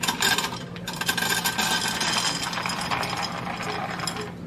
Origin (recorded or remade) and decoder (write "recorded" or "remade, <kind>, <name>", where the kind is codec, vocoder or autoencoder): recorded